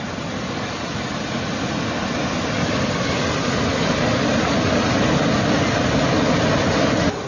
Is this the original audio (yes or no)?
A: yes